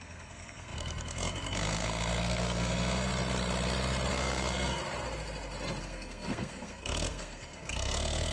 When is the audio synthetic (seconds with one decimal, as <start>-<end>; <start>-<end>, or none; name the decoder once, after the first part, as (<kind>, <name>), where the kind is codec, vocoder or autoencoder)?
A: 0.0-3.1 (codec, SNAC); 4.1-4.8; 5.8-8.3